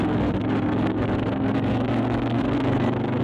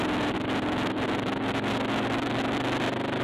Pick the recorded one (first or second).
second